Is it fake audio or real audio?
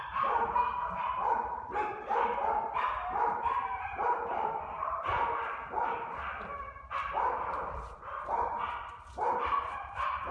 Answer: fake